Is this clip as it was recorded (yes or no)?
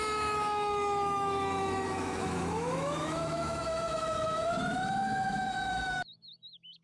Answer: no